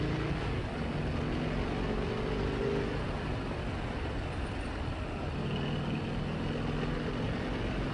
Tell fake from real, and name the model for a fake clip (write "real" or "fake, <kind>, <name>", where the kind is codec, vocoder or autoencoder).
real